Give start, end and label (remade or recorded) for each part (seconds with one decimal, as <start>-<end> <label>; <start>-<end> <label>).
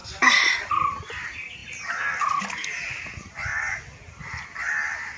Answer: 0.0-0.7 remade; 0.7-5.2 recorded